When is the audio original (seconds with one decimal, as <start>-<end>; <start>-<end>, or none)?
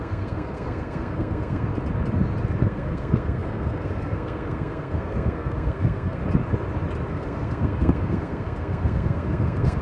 1.7-2.6; 6.2-7.1